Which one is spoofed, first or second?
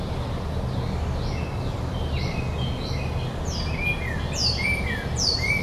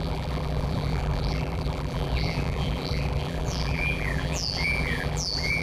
second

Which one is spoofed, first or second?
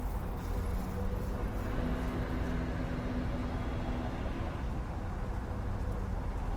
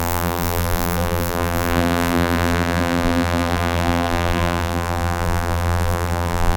second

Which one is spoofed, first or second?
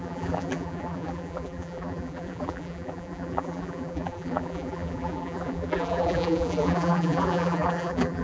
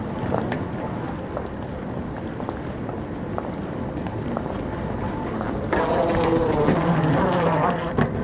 first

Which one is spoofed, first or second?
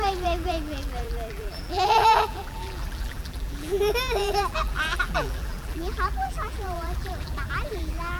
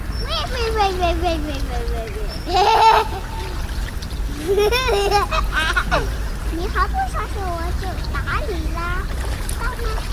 first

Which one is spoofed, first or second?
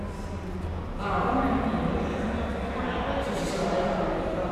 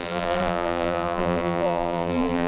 second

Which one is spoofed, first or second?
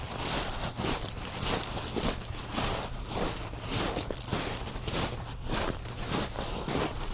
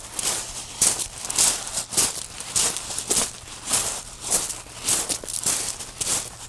first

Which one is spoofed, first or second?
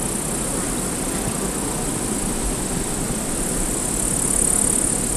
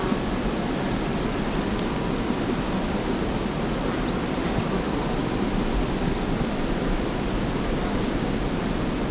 second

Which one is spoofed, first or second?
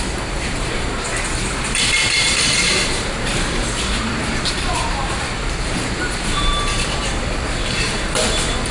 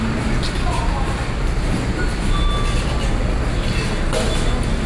first